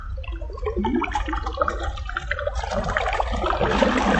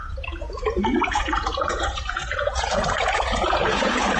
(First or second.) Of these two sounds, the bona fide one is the first